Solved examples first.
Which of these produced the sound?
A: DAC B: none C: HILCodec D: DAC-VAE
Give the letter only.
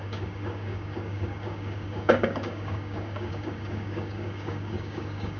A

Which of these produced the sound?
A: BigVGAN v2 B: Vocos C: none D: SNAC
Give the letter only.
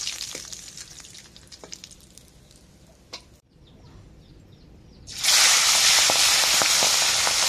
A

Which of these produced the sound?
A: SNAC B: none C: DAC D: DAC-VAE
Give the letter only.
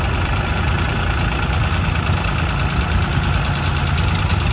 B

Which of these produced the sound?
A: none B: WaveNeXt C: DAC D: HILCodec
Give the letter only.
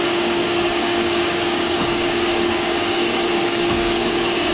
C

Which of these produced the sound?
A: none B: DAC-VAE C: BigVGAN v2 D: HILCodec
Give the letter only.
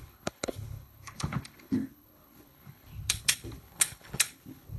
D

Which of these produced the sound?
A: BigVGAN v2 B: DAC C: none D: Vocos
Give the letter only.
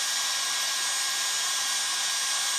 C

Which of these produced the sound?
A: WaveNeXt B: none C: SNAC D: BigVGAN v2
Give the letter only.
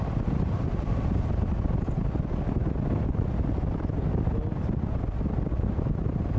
B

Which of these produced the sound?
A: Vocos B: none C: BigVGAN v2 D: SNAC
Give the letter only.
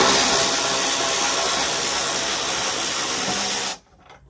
B